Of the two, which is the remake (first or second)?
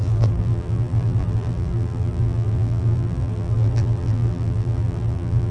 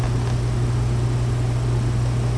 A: first